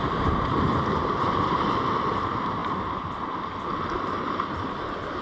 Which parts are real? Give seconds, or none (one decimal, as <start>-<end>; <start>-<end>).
0.0-5.2